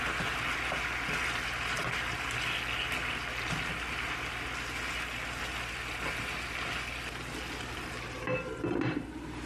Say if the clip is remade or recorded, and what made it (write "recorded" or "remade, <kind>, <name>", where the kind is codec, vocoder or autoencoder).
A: recorded